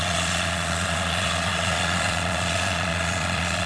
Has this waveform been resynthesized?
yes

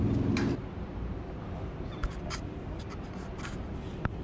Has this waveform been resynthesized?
yes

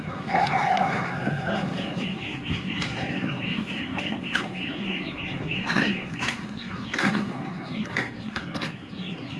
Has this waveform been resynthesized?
yes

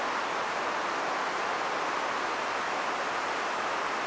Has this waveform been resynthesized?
no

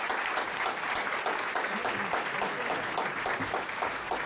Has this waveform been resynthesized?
no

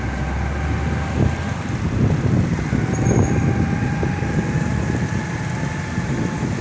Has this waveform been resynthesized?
no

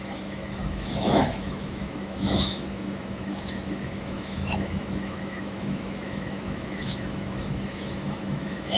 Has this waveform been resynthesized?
yes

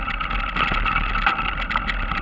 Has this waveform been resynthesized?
no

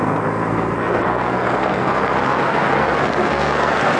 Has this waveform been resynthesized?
yes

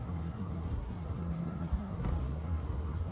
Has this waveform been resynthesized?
yes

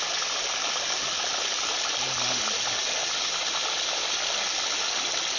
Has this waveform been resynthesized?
no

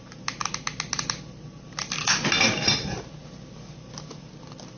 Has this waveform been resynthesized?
no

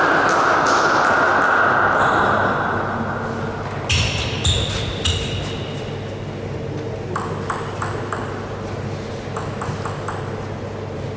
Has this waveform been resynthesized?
no